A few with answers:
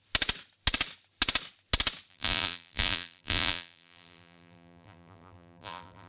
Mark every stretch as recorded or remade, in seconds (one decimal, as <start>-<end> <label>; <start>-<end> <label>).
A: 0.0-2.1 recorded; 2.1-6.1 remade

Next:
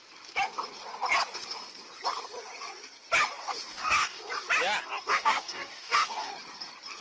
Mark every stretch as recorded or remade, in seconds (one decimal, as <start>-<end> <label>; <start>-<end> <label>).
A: 0.0-3.7 recorded; 3.7-4.2 remade; 4.2-5.1 recorded; 5.1-6.3 remade; 6.3-7.0 recorded

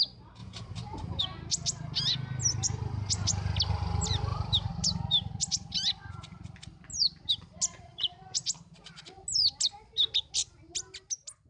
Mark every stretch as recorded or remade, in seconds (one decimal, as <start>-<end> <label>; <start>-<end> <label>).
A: 0.0-0.4 recorded; 0.4-1.2 remade; 1.2-4.3 recorded; 4.3-5.0 remade; 5.0-7.9 recorded; 7.9-8.4 remade; 8.4-11.5 recorded

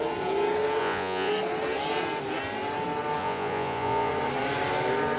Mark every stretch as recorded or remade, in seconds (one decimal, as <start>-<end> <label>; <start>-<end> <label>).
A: 0.0-0.8 recorded; 0.8-1.3 remade; 1.3-3.2 recorded; 3.2-4.1 remade; 4.1-5.2 recorded

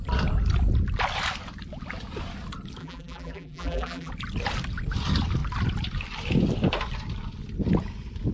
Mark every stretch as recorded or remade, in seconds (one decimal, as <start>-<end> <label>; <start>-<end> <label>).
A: 0.0-2.8 recorded; 2.8-4.1 remade; 4.1-8.3 recorded